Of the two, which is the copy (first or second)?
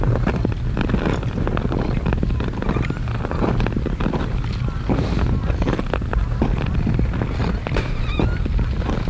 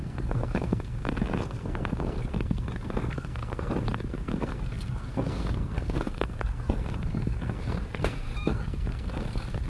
second